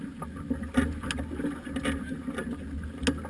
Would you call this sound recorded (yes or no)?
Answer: yes